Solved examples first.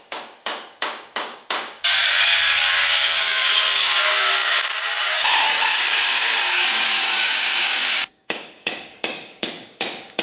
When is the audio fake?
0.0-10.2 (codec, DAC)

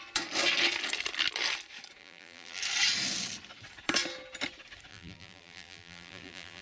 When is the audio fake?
2.0-2.6 (vocoder, BigVGAN v2); 4.9-6.6

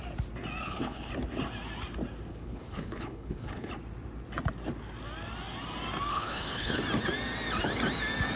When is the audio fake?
0.6-1.1 (codec, HILCodec); 2.3-3.7; 6.1-6.8

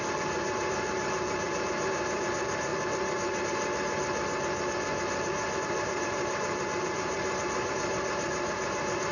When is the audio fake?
0.0-2.7 (vocoder, BigVGAN v2); 5.6-9.1